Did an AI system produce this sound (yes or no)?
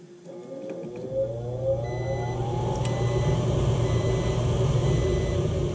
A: no